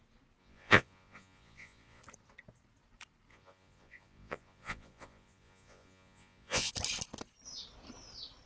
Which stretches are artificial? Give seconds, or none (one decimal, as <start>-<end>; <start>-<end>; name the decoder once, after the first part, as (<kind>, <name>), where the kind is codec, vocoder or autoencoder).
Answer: 0.4-2.0 (vocoder, Vocos); 3.3-6.7